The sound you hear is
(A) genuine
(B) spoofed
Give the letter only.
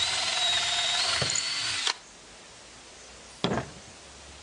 A